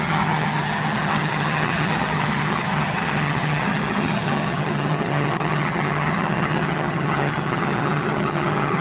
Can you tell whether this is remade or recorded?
remade